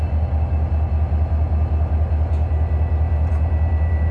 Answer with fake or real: real